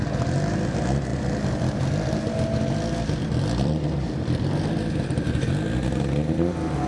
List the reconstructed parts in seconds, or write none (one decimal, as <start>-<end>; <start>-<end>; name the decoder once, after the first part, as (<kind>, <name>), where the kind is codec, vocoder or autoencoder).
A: 1.1-5.2 (vocoder, BigVGAN v2)